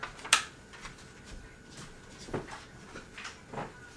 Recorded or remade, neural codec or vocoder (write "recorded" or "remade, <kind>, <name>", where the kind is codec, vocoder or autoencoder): recorded